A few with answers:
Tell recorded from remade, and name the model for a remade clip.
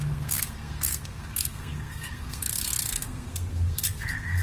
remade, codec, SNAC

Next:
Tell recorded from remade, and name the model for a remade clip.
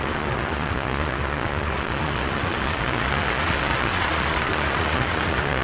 remade, vocoder, Vocos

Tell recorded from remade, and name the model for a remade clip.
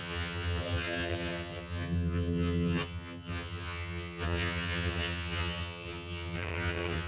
remade, vocoder, HiFi-GAN